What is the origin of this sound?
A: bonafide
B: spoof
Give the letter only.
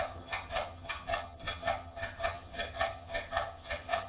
B